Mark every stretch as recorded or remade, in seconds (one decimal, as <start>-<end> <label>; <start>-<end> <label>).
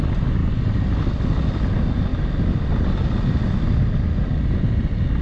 0.0-5.2 recorded